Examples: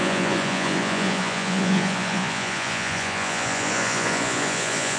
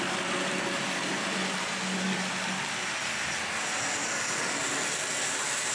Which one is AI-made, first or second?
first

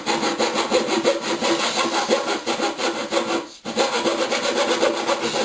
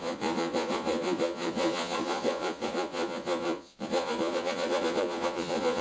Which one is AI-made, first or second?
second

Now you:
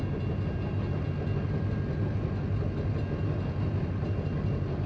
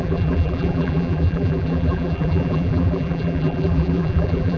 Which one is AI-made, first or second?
second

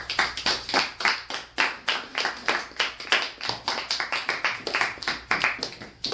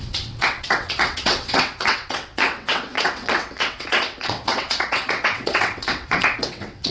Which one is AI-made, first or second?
second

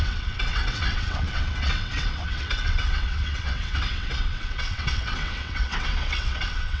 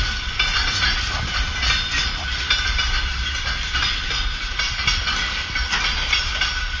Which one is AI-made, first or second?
first